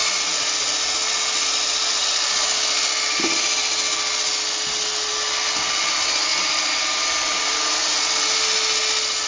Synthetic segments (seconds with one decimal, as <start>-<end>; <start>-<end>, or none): 6.3-7.6